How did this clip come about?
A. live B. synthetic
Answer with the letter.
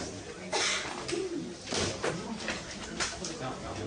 A